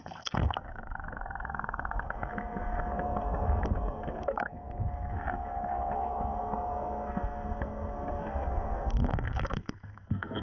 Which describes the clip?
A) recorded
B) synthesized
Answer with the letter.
B